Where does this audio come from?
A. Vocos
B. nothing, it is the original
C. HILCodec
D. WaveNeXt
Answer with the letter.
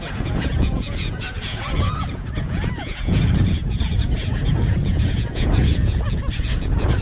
A